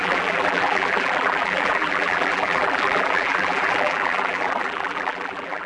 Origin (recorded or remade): remade